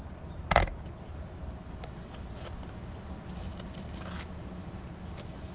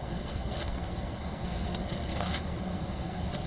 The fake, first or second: second